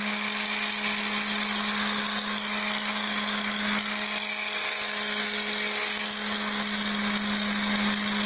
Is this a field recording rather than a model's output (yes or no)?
yes